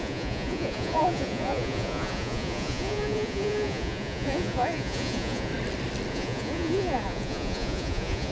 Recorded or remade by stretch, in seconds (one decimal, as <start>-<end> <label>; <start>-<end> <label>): 0.0-5.5 remade; 5.5-6.1 recorded; 6.1-8.3 remade